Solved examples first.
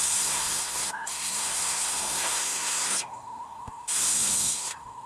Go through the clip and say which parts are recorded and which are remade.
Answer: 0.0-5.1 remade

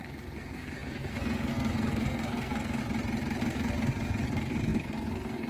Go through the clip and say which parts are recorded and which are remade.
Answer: 0.0-2.8 remade; 2.8-3.4 recorded; 3.4-5.5 remade

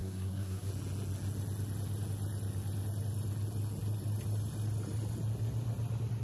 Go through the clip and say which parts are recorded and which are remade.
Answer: 0.0-0.7 remade; 0.7-6.2 recorded